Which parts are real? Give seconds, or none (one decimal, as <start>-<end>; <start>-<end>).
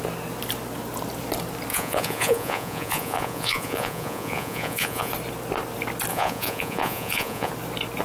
0.0-1.7; 5.1-6.1; 7.5-8.0